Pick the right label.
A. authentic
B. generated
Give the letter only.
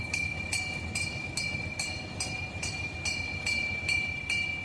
A